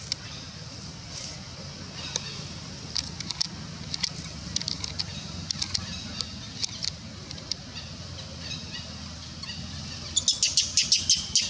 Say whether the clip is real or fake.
real